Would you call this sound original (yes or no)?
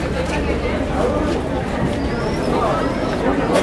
yes